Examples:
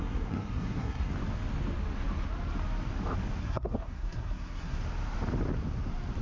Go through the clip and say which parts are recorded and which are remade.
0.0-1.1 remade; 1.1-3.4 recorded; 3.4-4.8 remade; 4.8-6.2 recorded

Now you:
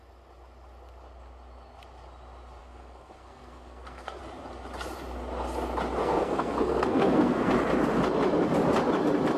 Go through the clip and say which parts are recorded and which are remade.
0.0-2.6 recorded; 2.6-4.2 remade; 4.2-6.0 recorded; 6.0-7.5 remade; 7.5-9.4 recorded

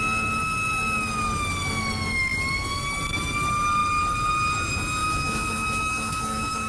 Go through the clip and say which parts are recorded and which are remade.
0.0-5.0 recorded; 5.0-6.7 remade

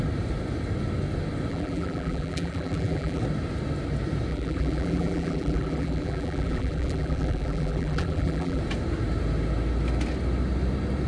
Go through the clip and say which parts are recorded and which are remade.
0.0-1.5 recorded; 1.5-3.2 remade; 3.2-4.3 recorded; 4.3-8.6 remade; 8.6-11.1 recorded

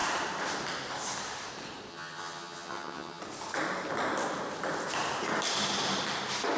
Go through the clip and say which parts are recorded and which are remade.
0.0-1.9 recorded; 1.9-3.2 remade; 3.2-6.6 recorded

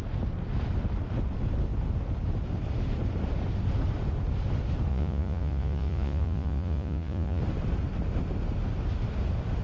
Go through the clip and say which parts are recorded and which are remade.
0.0-4.9 recorded; 4.9-7.4 remade; 7.4-9.6 recorded

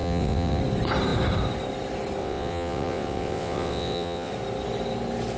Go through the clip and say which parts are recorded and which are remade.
0.0-0.6 remade; 0.6-2.2 recorded; 2.2-4.3 remade; 4.3-5.4 recorded